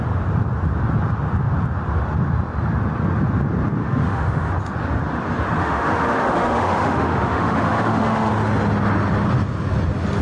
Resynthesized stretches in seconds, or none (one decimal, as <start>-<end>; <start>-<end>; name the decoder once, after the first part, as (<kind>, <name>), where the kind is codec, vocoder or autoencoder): 3.8-4.5 (autoencoder, DAC-VAE); 5.6-8.3